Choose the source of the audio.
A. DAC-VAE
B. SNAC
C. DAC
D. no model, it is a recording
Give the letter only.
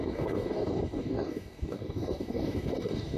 C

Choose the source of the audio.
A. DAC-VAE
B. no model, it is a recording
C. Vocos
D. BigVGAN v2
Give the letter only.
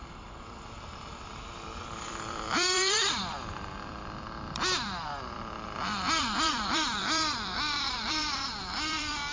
D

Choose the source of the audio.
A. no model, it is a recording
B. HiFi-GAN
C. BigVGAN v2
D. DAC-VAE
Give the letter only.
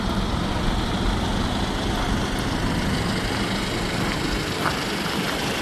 A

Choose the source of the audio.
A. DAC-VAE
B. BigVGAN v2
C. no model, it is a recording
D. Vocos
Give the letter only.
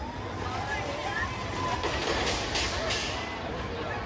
C